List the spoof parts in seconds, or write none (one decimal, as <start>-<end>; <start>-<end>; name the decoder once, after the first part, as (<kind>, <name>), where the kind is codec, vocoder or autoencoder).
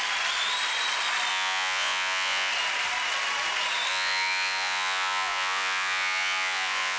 1.3-2.5 (vocoder, Vocos); 3.9-7.0